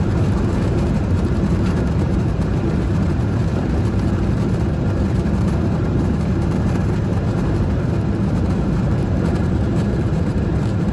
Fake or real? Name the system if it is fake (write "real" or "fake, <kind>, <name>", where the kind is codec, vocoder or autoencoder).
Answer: fake, vocoder, BigVGAN v2